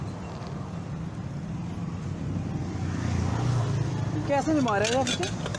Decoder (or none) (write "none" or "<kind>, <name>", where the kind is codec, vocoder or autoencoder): none